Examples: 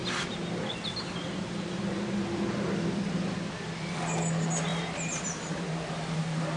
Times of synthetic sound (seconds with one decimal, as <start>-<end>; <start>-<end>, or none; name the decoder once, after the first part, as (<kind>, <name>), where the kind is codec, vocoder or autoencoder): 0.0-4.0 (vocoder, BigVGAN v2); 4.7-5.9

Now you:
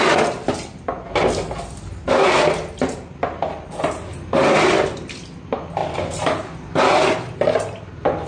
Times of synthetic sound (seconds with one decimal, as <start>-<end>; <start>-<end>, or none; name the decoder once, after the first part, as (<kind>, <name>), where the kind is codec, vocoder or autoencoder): none

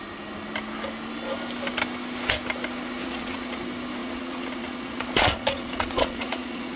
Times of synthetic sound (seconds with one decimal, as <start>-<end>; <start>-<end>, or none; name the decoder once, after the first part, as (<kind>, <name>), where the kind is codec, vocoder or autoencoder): 3.0-3.6 (vocoder, Vocos); 4.0-6.8